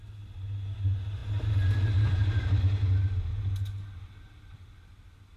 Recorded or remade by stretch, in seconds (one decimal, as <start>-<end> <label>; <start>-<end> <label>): 0.0-5.4 recorded